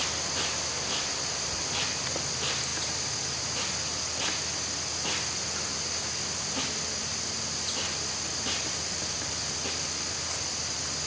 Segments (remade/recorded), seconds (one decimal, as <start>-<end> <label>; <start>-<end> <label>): 0.0-11.1 recorded